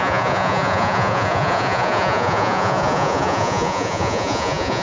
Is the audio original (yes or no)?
no